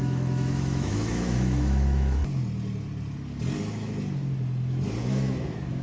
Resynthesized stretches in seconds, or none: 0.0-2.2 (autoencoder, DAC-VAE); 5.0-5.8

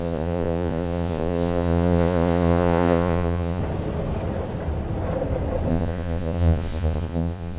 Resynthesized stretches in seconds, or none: 0.0-3.6 (vocoder, Vocos); 5.7-7.6

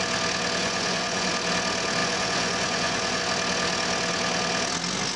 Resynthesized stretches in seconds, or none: 0.6-1.3 (vocoder, Vocos); 2.0-3.2

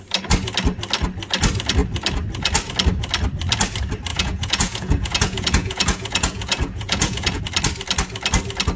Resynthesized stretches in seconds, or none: 4.1-7.4 (vocoder, Vocos)

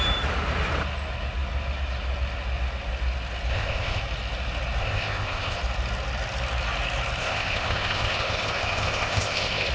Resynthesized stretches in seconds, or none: 3.5-4.0 (codec, ZipCodec); 4.8-5.6; 7.2-9.7